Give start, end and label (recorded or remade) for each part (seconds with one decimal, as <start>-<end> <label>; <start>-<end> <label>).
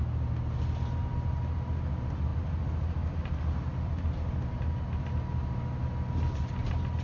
0.0-7.0 recorded